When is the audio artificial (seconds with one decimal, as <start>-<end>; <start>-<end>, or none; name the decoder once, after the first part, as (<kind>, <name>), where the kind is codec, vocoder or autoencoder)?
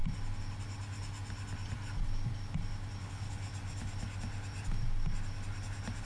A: 3.0-3.5 (codec, HILCodec)